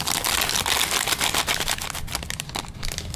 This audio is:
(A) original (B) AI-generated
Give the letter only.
A